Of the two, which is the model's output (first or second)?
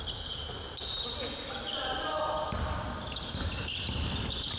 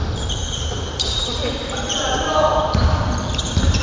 second